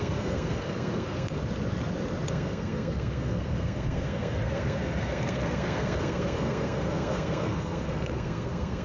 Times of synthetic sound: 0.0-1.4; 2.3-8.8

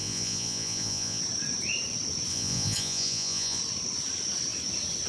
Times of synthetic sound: 0.0-1.2; 2.3-3.6

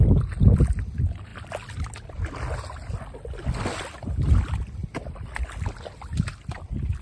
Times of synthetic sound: none